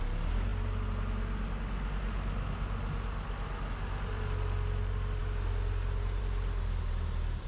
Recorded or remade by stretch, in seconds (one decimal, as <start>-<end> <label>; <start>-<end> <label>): 0.0-7.5 recorded